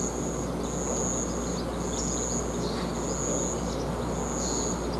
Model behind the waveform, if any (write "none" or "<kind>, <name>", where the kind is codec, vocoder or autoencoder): none